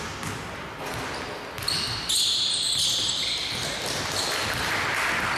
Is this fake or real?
real